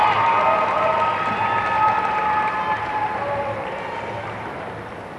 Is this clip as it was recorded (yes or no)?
yes